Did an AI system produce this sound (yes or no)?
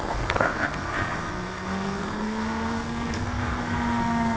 yes